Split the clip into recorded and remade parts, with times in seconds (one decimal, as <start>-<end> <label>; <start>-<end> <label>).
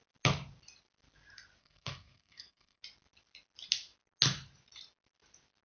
0.0-1.6 recorded; 1.6-2.8 remade; 2.8-5.6 recorded